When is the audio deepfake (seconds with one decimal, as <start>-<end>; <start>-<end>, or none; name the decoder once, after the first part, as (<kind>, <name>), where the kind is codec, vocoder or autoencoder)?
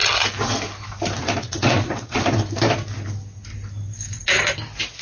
1.2-2.2 (vocoder, WaveNeXt)